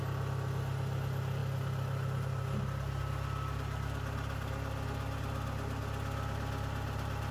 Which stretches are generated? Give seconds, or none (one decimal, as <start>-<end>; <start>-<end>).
none